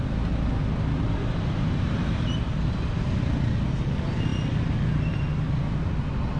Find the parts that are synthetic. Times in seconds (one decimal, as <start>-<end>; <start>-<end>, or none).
none